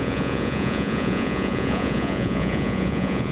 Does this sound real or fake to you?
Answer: fake